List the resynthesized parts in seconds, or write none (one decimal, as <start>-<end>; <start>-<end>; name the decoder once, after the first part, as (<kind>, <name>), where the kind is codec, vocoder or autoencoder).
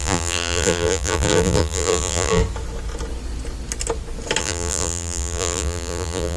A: 0.0-2.4 (vocoder, BigVGAN v2); 4.4-6.4